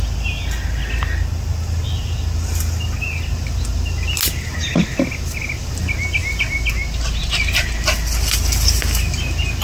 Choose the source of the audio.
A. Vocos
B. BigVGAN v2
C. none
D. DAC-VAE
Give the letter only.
C